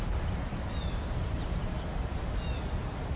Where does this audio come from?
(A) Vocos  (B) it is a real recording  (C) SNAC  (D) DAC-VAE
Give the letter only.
B